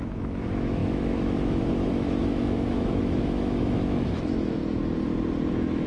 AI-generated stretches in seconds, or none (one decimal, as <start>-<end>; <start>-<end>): 0.0-4.6; 5.5-5.9